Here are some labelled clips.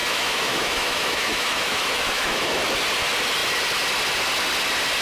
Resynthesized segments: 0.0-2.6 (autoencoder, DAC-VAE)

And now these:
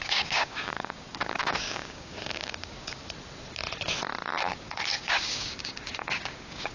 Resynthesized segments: 0.0-3.0 (codec, DAC); 4.4-6.7

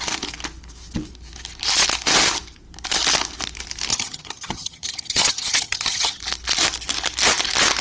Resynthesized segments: 3.9-6.2 (vocoder, HiFi-GAN)

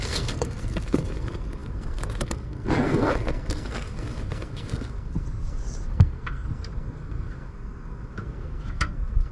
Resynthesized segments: 0.0-9.3 (codec, SNAC)